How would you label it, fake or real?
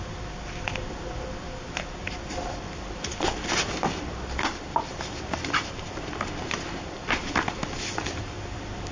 real